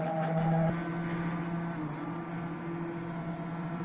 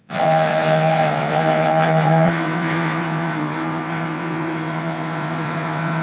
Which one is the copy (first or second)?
second